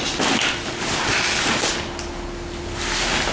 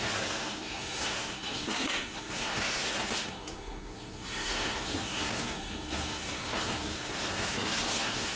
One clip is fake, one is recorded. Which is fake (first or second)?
second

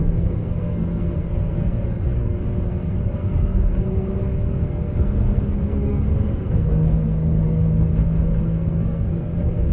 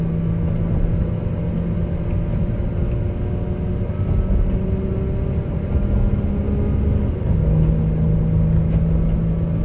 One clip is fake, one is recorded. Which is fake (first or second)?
first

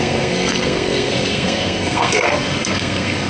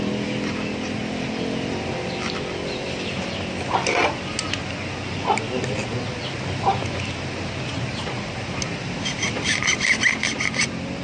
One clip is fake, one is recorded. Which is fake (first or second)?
first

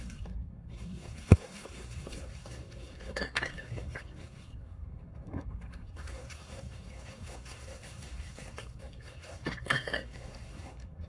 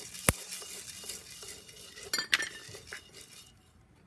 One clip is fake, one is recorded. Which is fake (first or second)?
first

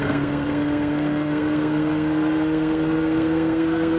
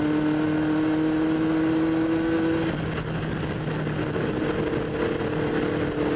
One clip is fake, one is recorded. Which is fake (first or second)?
first